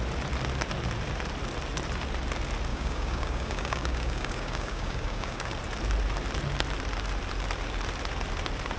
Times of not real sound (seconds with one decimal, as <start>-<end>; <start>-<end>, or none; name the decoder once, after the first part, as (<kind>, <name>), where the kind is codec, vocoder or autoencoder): 2.7-5.5 (codec, DAC)